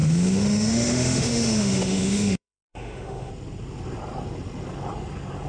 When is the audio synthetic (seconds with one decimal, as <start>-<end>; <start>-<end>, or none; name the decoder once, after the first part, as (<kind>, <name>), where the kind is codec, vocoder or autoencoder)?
0.0-3.3 (autoencoder, DAC-VAE)